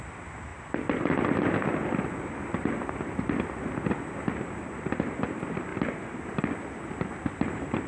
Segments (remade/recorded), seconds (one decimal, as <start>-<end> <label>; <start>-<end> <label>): 0.0-7.9 recorded